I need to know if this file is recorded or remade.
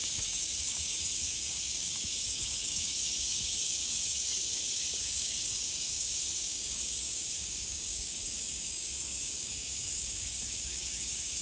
remade